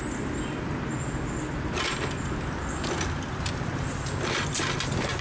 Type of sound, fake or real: real